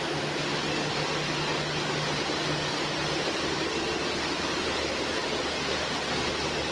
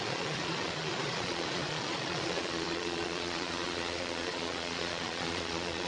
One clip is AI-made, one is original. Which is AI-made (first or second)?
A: second